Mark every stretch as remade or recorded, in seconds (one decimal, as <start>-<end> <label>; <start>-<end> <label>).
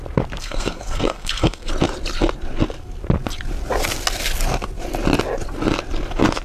0.0-0.4 recorded; 0.4-1.7 remade; 1.7-6.4 recorded